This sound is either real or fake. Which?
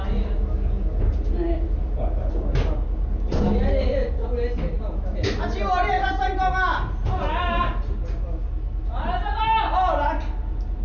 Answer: real